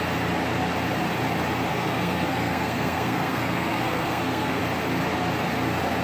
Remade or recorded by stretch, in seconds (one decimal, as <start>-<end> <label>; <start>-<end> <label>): 0.0-1.7 recorded; 1.7-4.6 remade; 4.6-6.0 recorded